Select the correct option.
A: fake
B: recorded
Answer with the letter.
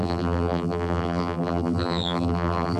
A